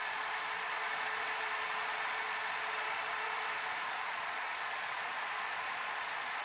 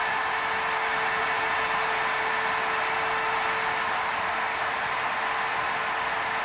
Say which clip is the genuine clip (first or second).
second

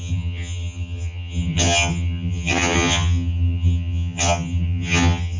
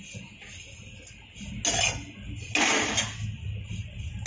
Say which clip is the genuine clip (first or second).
second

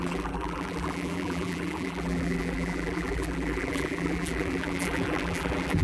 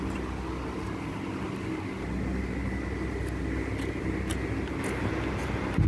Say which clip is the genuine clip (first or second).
second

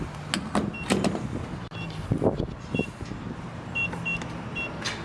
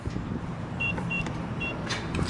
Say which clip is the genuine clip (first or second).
first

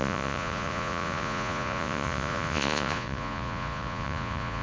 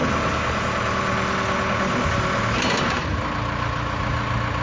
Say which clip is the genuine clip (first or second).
second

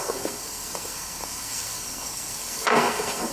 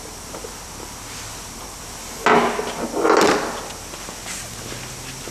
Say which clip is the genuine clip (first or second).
second